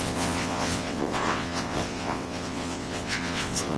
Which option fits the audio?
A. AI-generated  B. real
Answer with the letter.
A